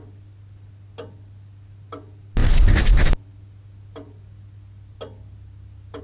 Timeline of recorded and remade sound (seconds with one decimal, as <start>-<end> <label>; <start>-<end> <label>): 0.0-6.0 recorded